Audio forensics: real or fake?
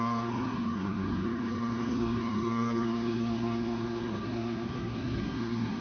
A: fake